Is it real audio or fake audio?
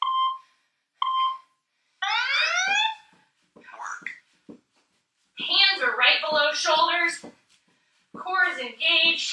real